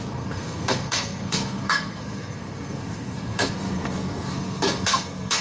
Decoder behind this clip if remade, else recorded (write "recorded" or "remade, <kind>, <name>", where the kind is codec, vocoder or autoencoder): remade, codec, SNAC